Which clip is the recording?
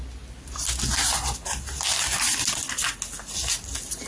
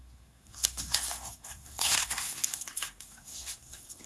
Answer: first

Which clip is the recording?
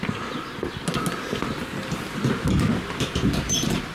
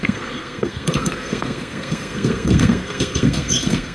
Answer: first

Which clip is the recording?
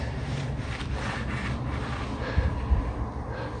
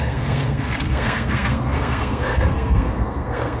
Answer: first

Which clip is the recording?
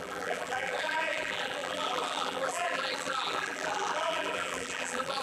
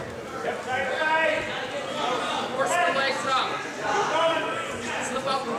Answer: second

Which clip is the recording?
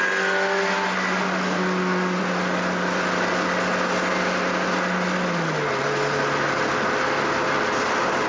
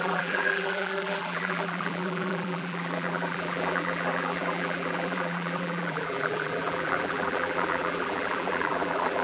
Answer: first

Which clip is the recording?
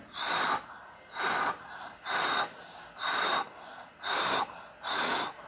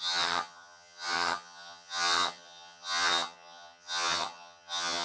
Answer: first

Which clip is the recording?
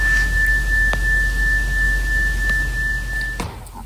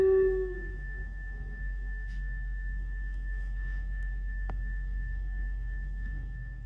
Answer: first